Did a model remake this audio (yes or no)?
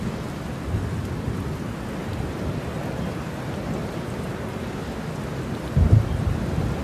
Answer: no